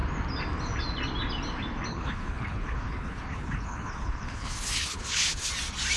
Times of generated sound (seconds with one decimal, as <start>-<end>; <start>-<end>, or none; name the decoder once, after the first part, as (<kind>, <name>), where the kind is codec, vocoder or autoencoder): 1.9-5.5 (codec, HILCodec)

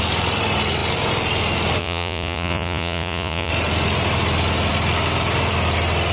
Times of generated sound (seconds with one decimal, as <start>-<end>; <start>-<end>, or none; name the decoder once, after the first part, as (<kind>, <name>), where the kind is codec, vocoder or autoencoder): 1.8-3.5 (vocoder, Vocos)

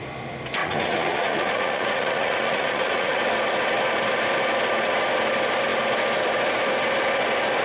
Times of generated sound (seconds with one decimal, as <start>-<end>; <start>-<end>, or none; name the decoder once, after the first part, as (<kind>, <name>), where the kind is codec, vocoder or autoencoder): 0.6-3.2 (vocoder, Vocos)

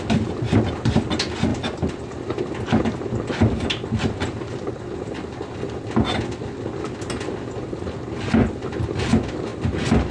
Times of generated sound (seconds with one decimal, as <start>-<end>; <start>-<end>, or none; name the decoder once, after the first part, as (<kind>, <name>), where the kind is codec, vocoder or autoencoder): none